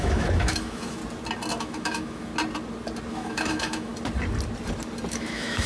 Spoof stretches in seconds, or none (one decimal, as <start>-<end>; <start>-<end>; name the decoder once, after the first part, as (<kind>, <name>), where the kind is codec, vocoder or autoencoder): 0.0-1.0 (autoencoder, DAC-VAE); 1.6-2.3; 3.1-3.9; 5.1-5.7